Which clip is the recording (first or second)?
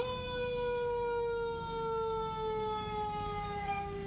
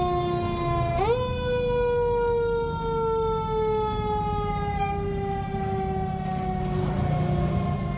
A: second